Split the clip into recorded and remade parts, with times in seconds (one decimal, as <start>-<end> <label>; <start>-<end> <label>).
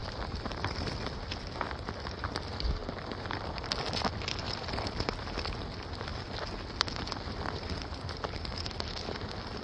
0.0-0.5 remade; 0.5-9.6 recorded